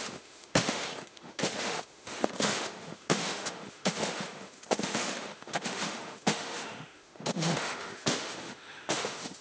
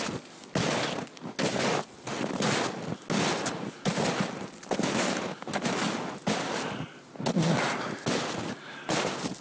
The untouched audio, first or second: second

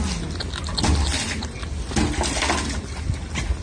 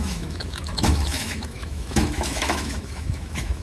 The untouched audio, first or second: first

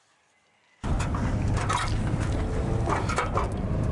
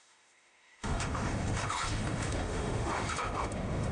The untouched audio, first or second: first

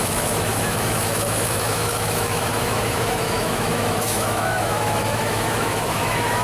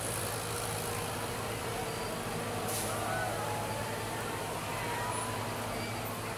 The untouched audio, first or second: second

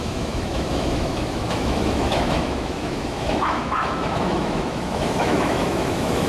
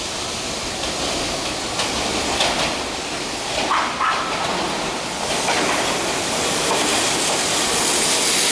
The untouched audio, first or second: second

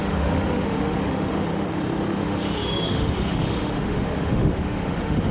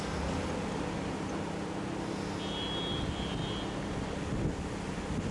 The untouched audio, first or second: second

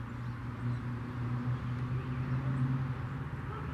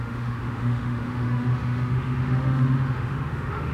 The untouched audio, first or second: first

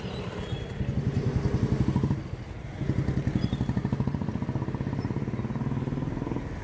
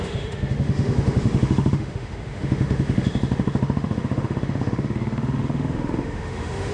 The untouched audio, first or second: first